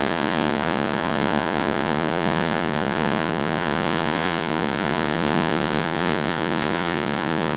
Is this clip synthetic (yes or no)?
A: yes